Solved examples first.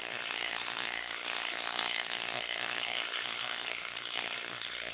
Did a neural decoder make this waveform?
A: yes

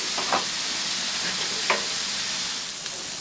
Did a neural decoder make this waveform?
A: no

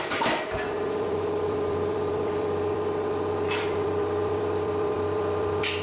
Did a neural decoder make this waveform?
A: yes